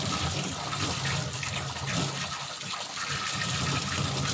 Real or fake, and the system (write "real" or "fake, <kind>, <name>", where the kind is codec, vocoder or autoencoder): real